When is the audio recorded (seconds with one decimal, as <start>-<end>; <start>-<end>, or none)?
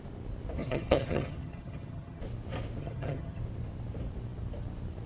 0.0-0.6; 2.2-2.8; 3.4-5.1